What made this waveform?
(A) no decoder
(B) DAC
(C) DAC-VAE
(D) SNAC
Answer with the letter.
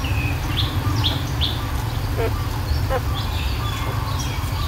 A